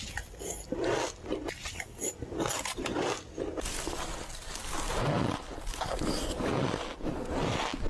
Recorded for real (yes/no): yes